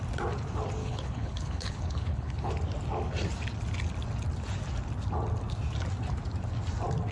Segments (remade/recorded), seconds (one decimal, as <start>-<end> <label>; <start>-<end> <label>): 0.0-0.8 recorded; 0.8-2.5 remade; 2.5-7.1 recorded